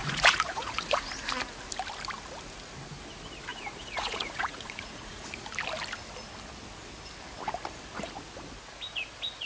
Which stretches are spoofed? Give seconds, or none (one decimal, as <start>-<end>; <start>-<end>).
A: 0.0-1.0; 3.5-5.5